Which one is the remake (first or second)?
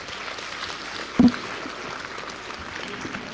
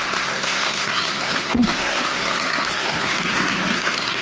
second